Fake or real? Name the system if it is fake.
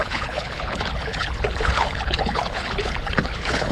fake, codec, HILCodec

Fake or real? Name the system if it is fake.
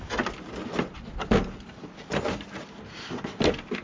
real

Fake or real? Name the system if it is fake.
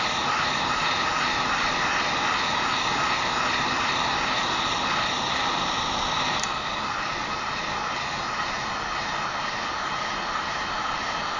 real